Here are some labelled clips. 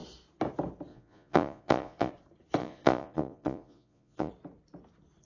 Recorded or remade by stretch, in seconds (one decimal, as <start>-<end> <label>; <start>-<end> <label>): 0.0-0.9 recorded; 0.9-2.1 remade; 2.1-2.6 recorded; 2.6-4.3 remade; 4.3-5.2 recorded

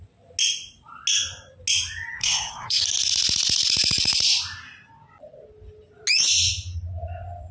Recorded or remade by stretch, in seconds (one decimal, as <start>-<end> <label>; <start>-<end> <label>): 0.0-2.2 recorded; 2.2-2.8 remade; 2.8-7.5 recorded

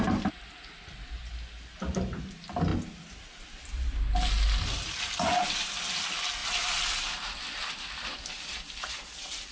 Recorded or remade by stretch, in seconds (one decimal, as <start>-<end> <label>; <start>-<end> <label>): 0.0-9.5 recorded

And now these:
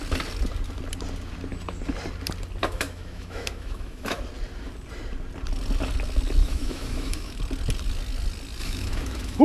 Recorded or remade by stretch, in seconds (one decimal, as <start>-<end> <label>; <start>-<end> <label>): 0.0-2.6 recorded; 2.6-4.2 remade; 4.2-6.4 recorded; 6.4-7.4 remade; 7.4-8.6 recorded; 8.6-9.4 remade